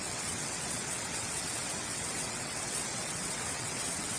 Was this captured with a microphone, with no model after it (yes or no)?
no